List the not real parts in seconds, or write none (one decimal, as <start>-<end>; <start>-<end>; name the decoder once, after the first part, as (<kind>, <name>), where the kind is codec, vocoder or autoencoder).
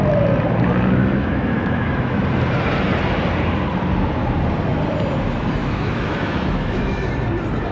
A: 1.0-2.2 (autoencoder, DAC-VAE); 5.6-7.1